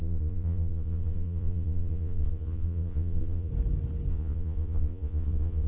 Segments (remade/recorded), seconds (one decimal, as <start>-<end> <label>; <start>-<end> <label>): 0.0-3.5 remade; 3.5-4.1 recorded; 4.1-5.7 remade